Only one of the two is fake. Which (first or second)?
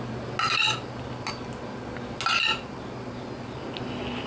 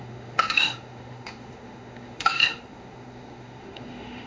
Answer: second